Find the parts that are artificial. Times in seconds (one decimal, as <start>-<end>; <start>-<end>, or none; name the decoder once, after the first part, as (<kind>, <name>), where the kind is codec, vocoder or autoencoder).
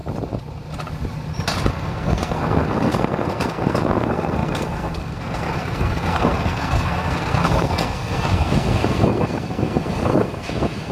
1.7-10.9 (codec, SNAC)